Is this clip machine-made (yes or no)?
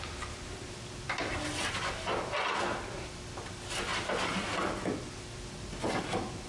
no